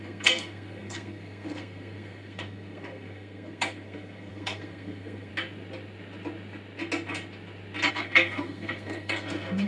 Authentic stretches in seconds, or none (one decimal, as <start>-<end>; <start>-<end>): 5.3-7.9